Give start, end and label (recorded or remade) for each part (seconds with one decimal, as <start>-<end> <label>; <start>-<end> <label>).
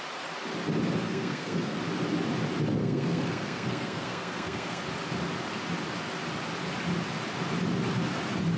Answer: 0.0-1.0 recorded; 1.0-1.8 remade; 1.8-2.8 recorded; 2.8-4.8 remade; 4.8-8.6 recorded